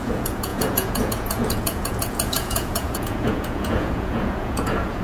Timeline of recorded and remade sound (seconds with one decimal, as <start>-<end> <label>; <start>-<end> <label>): 0.0-5.0 remade